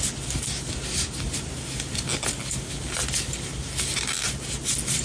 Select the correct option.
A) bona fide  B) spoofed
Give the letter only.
A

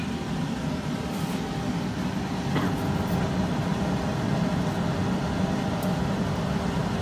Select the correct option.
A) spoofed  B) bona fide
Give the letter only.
B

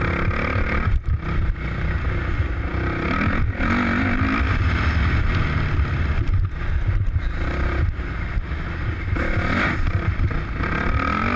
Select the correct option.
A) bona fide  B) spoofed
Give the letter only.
A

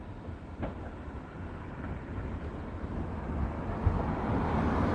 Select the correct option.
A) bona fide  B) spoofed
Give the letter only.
A